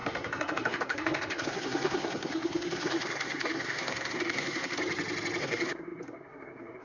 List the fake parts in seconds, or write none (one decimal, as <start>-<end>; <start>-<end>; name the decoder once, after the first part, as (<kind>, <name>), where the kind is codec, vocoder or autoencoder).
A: 0.0-4.8 (codec, SNAC); 5.4-6.8